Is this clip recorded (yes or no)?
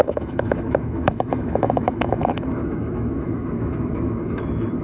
no